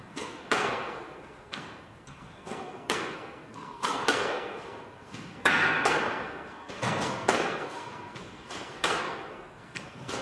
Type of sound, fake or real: fake